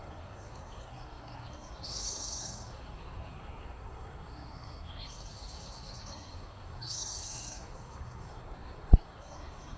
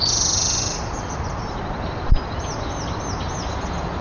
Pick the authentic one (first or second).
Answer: second